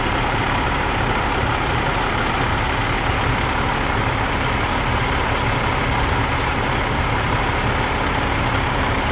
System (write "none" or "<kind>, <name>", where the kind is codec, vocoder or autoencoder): vocoder, BigVGAN v2